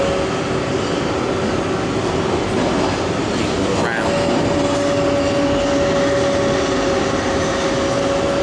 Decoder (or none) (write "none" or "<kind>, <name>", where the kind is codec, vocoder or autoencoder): none